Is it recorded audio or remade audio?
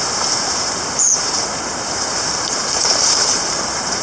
remade